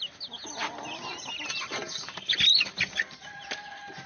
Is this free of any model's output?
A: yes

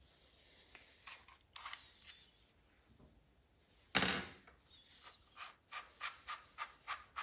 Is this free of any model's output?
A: yes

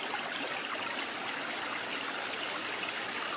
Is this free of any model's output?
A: yes